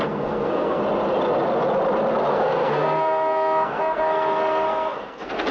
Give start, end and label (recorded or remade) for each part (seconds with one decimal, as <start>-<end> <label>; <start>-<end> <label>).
0.0-0.8 remade; 0.8-2.3 recorded; 2.3-5.5 remade